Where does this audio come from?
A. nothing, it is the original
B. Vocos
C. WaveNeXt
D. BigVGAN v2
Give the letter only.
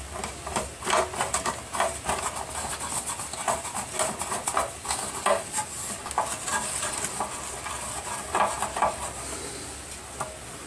A